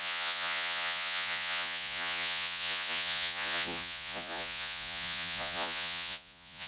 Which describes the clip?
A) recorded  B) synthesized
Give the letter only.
B